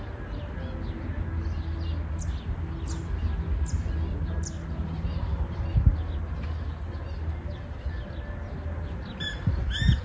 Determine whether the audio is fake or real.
real